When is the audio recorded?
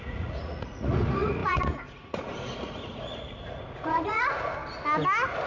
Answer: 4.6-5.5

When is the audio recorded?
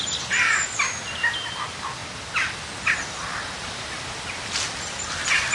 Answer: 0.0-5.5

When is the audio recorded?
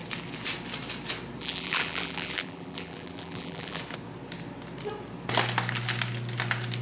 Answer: 0.0-1.4; 3.8-6.8